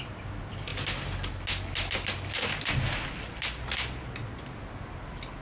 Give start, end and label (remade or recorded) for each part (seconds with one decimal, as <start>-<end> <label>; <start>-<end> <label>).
0.0-5.4 recorded